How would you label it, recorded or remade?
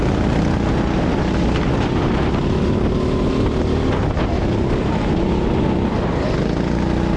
recorded